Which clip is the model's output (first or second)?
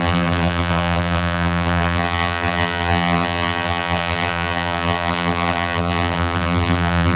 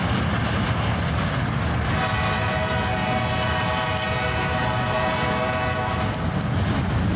first